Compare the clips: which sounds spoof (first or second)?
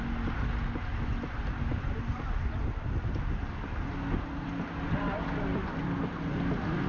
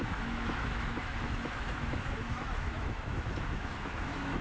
second